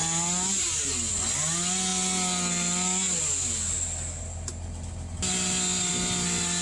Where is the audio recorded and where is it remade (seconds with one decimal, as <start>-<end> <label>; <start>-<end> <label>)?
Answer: 0.0-6.6 recorded

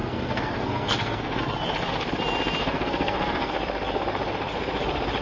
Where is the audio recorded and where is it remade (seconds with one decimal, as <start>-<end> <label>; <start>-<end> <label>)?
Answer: 0.0-1.4 remade; 1.4-2.6 recorded; 2.6-3.5 remade; 3.5-5.2 recorded

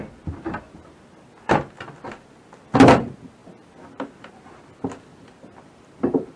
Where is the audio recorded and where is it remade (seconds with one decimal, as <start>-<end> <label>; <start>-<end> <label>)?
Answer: 0.0-6.4 recorded